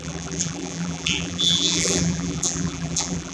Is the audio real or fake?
fake